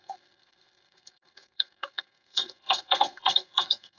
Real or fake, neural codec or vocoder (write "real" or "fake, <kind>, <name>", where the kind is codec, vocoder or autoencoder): fake, codec, SNAC